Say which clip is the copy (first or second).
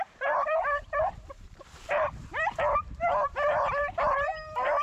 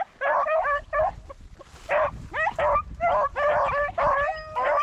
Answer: first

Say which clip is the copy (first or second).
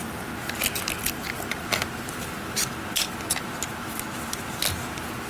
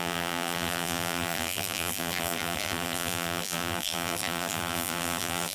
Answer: second